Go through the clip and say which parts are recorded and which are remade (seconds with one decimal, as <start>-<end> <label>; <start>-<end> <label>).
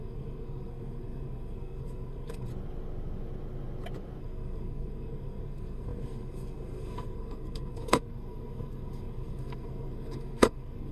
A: 0.0-2.5 remade; 2.5-4.2 recorded; 4.2-10.9 remade